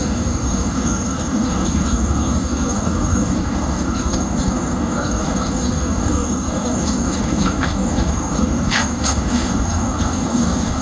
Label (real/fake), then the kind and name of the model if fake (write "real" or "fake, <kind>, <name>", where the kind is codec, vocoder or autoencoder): fake, codec, DAC